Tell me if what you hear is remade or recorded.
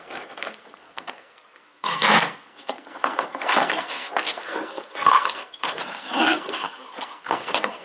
remade